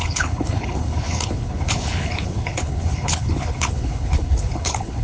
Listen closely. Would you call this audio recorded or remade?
remade